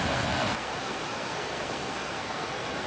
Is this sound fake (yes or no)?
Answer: yes